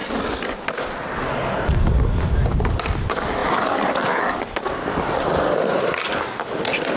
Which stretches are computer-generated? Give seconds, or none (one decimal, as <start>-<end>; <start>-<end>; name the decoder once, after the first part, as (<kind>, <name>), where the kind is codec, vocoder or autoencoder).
3.4-5.8 (vocoder, BigVGAN v2)